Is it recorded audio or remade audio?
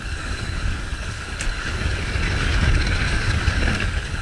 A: remade